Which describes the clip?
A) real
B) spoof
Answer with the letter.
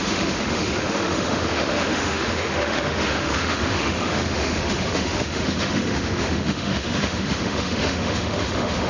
B